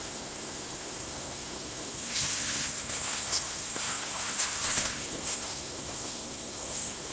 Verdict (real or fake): fake